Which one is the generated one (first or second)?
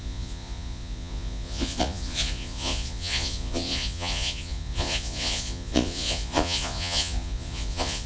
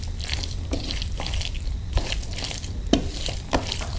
first